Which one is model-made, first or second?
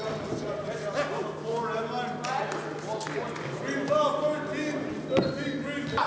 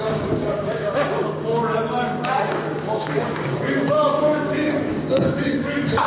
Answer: second